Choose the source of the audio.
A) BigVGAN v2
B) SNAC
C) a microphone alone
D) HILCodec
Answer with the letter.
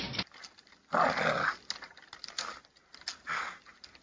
C